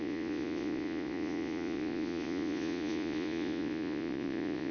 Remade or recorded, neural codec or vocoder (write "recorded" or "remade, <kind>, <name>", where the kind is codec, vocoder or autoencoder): remade, vocoder, Vocos